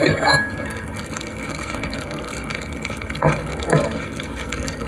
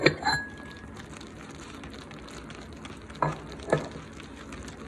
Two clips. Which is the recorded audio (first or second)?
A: second